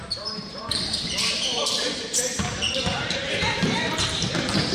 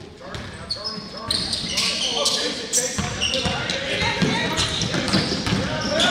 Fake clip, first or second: first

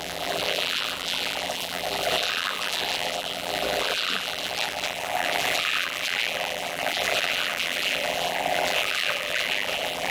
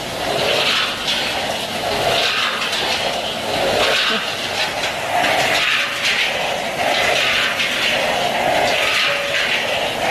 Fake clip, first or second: first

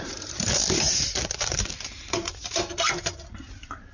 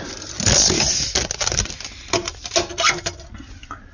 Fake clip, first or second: first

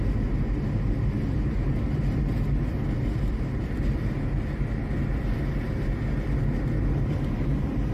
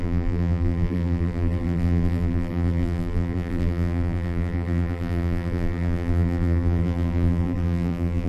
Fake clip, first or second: second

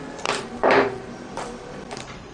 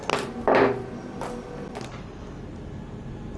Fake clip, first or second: first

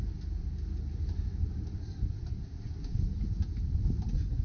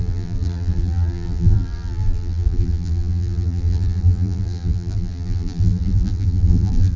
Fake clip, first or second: second